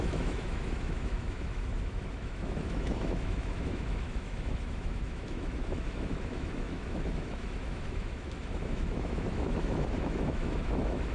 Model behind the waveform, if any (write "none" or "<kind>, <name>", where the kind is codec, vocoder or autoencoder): autoencoder, DAC-VAE